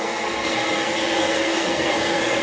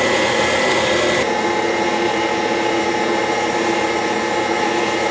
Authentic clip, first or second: second